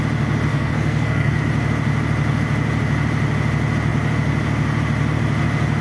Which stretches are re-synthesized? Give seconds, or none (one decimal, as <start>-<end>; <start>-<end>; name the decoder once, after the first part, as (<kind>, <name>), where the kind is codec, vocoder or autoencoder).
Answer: 0.5-1.4 (codec, SNAC)